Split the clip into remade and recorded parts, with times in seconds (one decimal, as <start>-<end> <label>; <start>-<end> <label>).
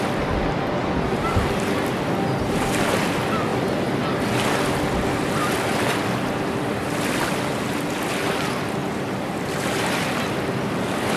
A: 0.0-11.2 recorded